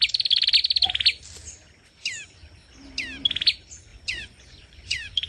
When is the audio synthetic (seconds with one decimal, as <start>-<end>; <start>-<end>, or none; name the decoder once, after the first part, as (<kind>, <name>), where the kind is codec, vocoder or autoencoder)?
3.9-5.3 (vocoder, Vocos)